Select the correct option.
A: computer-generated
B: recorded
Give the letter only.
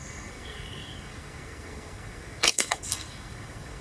A